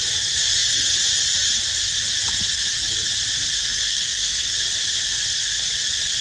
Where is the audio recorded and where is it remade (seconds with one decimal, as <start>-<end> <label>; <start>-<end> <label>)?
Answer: 0.0-3.6 recorded; 3.6-4.5 remade; 4.5-6.2 recorded